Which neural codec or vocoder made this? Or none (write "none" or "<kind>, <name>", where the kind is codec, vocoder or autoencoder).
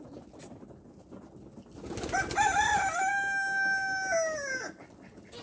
none